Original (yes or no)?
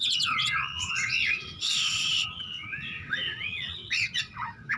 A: no